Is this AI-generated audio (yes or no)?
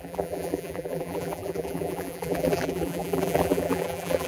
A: yes